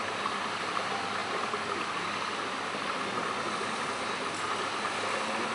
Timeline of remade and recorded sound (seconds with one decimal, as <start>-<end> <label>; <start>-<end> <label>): 0.0-5.5 recorded